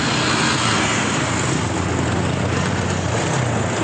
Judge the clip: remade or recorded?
recorded